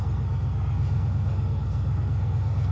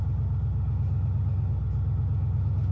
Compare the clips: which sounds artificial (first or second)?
first